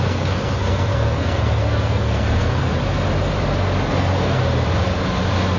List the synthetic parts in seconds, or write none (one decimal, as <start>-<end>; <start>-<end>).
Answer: 0.0-2.6; 3.9-4.4